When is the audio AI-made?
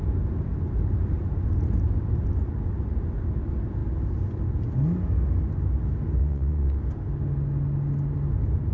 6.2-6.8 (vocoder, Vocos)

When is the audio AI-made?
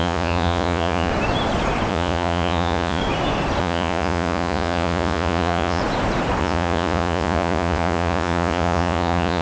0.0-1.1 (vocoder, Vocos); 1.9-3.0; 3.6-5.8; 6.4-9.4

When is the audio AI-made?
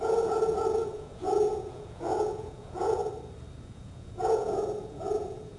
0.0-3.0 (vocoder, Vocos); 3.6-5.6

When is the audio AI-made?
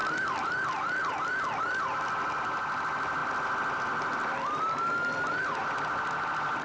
none